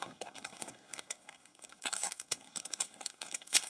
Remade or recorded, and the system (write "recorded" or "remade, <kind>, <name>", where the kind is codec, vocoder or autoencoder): remade, codec, SNAC